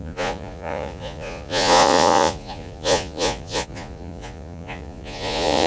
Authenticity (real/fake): fake